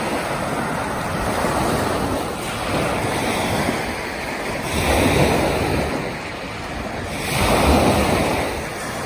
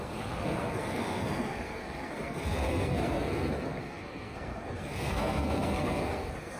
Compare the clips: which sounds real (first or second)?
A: first